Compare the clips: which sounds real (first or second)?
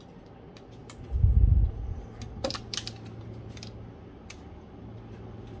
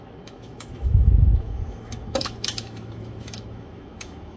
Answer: first